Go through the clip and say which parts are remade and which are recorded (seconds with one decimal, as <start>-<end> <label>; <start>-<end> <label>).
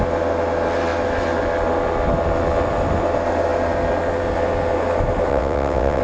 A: 0.0-5.3 recorded; 5.3-6.0 remade